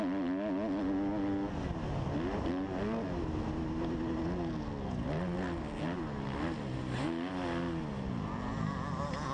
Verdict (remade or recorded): recorded